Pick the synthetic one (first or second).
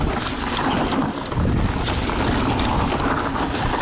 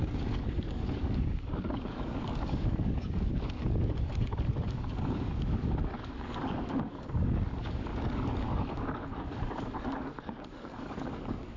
second